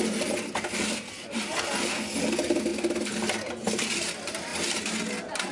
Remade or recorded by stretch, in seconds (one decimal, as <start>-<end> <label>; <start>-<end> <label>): 0.0-5.5 recorded

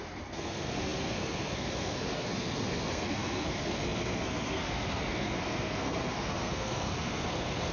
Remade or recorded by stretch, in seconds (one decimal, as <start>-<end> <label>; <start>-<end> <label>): 0.0-7.7 remade

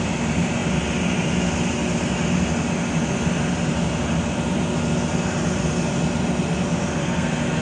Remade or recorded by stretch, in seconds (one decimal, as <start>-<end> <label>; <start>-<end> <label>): 0.0-7.0 recorded; 7.0-7.6 remade

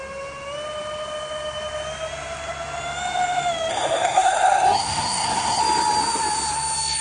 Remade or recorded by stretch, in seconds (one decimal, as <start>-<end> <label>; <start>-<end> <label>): 0.0-3.7 recorded; 3.7-5.6 remade; 5.6-7.0 recorded

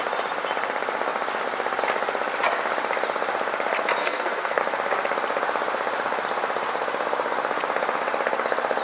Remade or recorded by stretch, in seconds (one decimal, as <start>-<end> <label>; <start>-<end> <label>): 0.0-4.0 recorded; 4.0-4.6 remade; 4.6-8.8 recorded

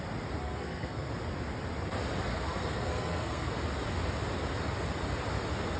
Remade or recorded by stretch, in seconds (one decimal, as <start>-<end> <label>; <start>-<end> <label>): 0.0-0.4 recorded; 0.4-1.1 remade; 1.1-2.3 recorded; 2.3-3.5 remade; 3.5-5.8 recorded

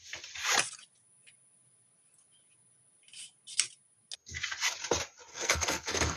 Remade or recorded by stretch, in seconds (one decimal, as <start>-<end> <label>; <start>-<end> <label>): 0.0-5.3 recorded; 5.3-6.2 remade

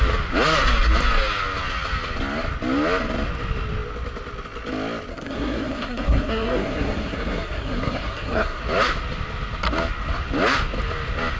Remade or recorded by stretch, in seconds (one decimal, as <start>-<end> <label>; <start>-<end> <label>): 0.0-5.1 recorded; 5.1-8.6 remade; 8.6-11.4 recorded